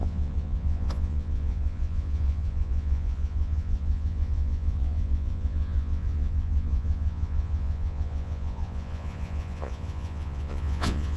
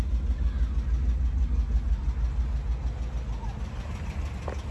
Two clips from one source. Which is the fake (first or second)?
first